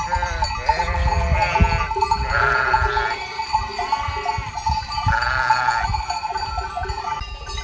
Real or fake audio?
fake